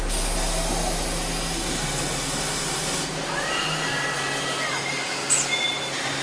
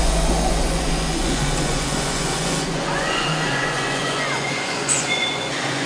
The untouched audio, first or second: first